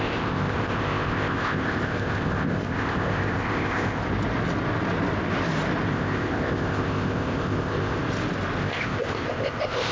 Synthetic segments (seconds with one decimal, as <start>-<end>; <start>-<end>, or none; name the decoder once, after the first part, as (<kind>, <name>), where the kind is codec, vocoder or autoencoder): 0.0-4.0 (codec, ZipCodec); 5.9-8.0; 8.6-9.9